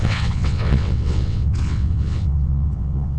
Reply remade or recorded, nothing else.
remade